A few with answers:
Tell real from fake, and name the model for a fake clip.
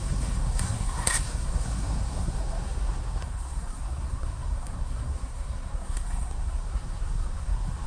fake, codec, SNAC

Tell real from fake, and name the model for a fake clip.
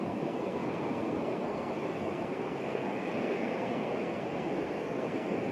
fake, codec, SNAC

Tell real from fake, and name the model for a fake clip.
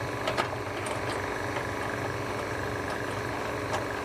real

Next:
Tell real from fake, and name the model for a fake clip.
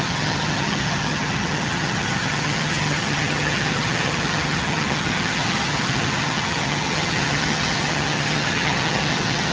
fake, vocoder, HiFi-GAN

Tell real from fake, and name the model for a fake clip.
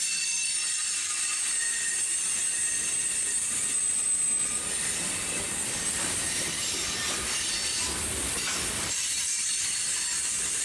fake, vocoder, BigVGAN v2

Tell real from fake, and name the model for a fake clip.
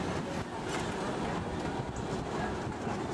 real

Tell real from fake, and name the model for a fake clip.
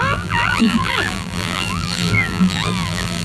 fake, vocoder, BigVGAN v2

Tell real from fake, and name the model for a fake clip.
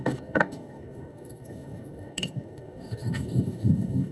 fake, codec, DAC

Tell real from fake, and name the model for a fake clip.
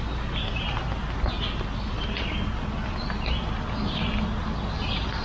real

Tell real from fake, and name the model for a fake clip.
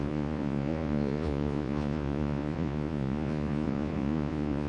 fake, vocoder, Vocos